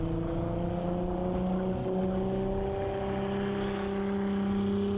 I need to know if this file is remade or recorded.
recorded